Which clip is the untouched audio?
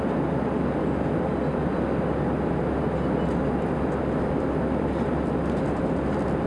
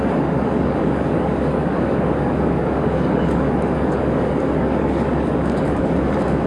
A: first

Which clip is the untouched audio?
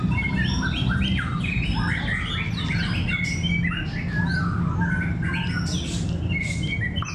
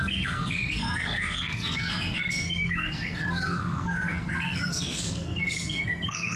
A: first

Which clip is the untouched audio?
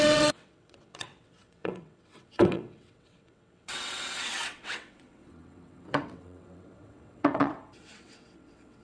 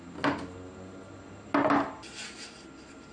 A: second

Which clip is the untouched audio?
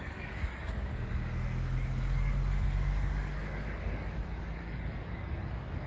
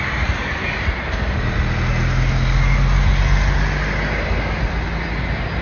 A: second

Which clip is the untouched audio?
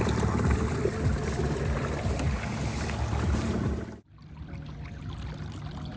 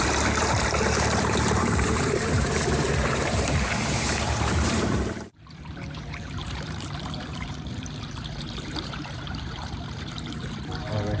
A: first